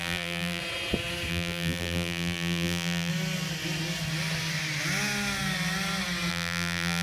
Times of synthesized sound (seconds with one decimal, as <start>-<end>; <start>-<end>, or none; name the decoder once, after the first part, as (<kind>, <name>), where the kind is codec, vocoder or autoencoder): 0.0-0.6 (vocoder, BigVGAN v2); 1.3-3.1; 6.3-7.0